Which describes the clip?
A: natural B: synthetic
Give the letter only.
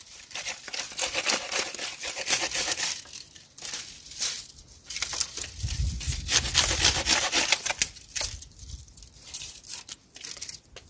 A